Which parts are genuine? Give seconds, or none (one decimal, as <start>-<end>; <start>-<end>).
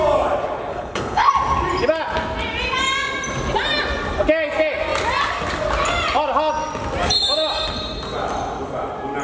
0.0-0.7; 1.3-9.2